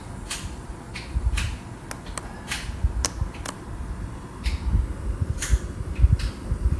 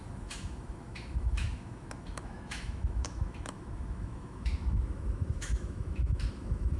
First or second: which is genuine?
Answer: first